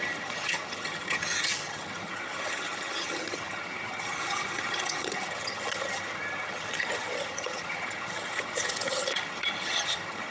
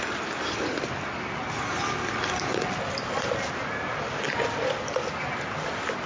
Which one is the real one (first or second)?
second